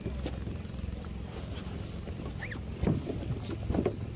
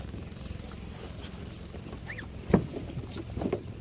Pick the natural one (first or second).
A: first